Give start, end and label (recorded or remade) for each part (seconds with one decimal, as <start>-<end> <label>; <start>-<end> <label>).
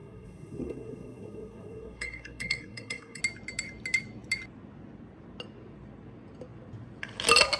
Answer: 0.0-3.2 remade; 3.2-7.6 recorded